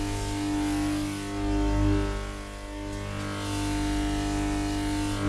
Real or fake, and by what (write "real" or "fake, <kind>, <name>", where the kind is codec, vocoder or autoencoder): real